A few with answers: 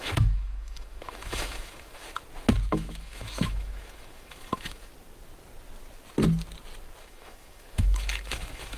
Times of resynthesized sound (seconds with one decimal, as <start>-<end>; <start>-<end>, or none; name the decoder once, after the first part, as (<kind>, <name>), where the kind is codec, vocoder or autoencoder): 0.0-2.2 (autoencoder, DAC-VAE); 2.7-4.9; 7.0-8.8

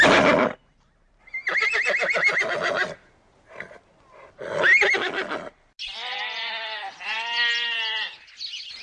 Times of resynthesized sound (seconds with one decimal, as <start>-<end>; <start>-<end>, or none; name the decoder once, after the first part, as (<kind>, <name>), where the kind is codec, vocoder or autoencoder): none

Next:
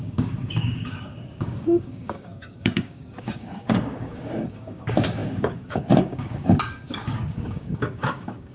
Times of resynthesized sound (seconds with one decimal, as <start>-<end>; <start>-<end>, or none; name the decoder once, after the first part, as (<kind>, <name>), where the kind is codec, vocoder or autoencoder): 0.0-8.5 (codec, DAC)

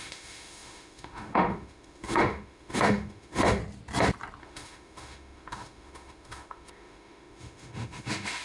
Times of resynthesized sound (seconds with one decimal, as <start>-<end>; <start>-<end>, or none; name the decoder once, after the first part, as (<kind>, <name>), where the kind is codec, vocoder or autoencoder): 0.0-3.6 (autoencoder, DAC-VAE); 4.4-8.4

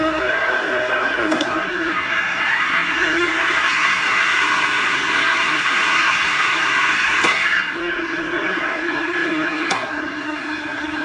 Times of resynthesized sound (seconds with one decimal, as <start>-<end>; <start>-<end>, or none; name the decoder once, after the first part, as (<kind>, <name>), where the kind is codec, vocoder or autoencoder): 0.0-11.0 (codec, SNAC)

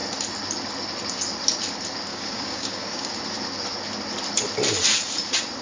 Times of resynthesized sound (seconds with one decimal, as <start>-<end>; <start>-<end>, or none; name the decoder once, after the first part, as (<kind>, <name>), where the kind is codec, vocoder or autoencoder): 2.1-3.1 (codec, DAC)

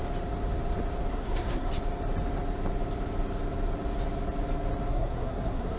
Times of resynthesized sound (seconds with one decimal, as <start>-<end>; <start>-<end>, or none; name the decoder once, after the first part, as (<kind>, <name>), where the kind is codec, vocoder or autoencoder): 1.1-1.7 (codec, SNAC); 4.9-5.8